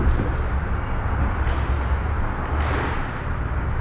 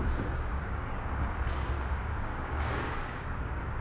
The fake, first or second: second